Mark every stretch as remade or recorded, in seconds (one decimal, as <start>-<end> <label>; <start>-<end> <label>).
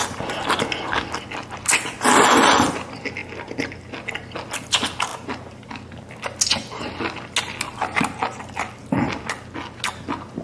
0.0-5.1 recorded; 5.1-6.1 remade; 6.1-10.4 recorded